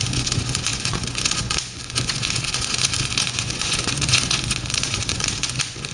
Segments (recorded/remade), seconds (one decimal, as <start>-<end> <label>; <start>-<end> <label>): 0.0-5.9 remade